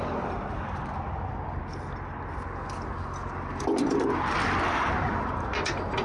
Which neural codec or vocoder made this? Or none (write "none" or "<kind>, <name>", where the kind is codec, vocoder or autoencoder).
none